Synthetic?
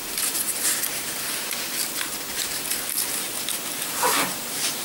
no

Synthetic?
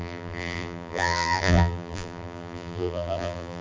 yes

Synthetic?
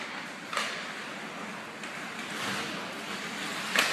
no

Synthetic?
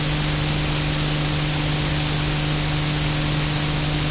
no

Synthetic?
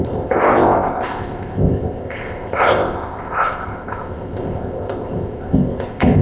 yes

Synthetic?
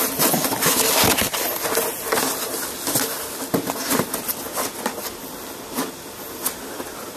no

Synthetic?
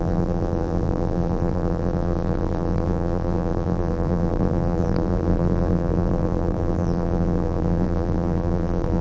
yes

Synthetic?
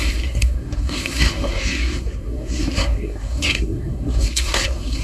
yes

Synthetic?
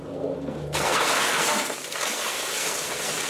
yes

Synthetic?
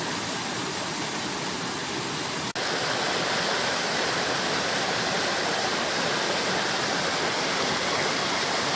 no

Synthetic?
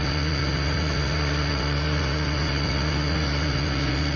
yes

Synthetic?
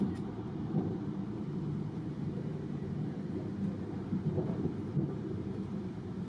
yes